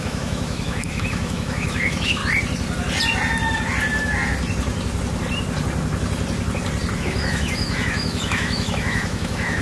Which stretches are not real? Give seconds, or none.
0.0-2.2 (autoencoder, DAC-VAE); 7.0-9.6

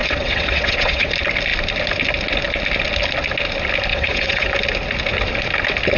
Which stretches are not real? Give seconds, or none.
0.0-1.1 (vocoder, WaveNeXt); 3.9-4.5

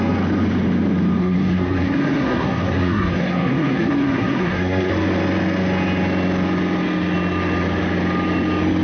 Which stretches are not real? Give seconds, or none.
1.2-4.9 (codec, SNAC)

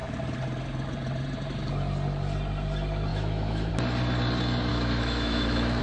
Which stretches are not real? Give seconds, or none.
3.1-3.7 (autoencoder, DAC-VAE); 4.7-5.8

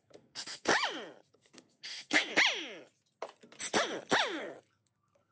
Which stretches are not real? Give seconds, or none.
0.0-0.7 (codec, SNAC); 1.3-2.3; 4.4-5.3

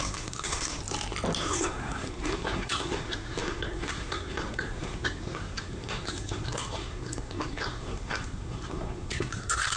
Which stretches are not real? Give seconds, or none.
0.0-0.8 (codec, SNAC); 1.4-9.8